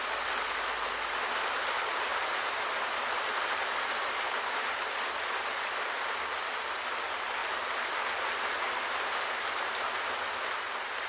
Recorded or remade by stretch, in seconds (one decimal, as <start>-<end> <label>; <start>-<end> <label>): 0.0-11.1 recorded